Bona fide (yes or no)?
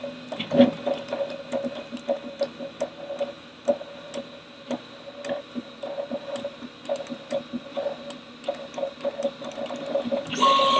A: yes